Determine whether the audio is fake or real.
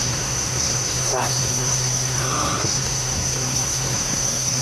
fake